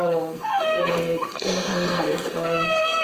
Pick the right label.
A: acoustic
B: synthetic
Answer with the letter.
B